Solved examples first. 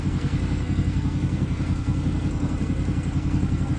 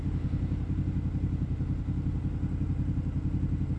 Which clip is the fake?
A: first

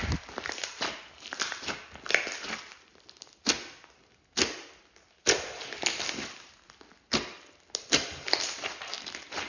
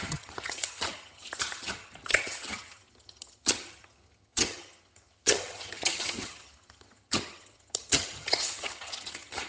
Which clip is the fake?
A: second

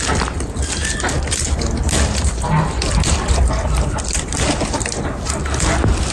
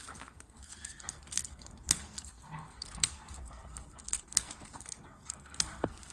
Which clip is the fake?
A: second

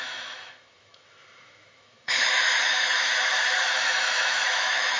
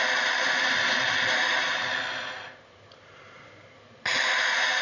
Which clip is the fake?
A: first